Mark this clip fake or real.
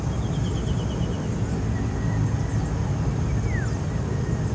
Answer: real